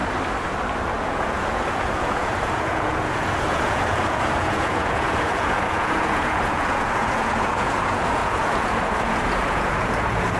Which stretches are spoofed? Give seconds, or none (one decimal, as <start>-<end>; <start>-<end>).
1.0-10.4